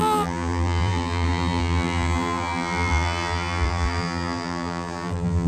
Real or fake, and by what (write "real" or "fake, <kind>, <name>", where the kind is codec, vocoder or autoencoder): fake, vocoder, BigVGAN v2